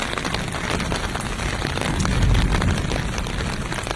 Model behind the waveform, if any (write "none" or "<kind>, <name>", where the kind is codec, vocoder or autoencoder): none